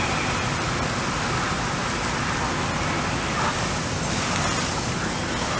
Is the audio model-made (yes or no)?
no